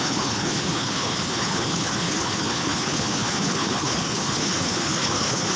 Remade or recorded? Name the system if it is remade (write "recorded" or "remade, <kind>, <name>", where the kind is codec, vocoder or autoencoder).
remade, codec, HILCodec